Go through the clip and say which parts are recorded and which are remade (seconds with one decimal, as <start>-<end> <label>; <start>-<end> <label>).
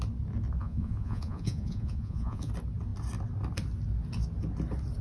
0.0-0.6 recorded; 0.6-2.5 remade; 2.5-5.0 recorded